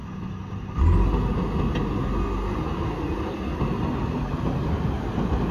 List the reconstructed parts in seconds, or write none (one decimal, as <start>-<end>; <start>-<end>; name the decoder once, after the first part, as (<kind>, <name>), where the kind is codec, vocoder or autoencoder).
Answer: 4.0-5.5 (vocoder, BigVGAN v2)